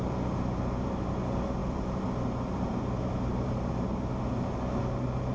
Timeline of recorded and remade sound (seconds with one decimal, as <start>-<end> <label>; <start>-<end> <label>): 0.0-1.6 recorded; 1.6-4.2 remade; 4.2-5.3 recorded